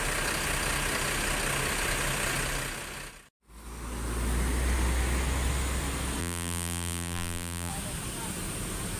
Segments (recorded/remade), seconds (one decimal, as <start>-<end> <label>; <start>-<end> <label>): 0.0-6.2 recorded; 6.2-7.7 remade; 7.7-9.0 recorded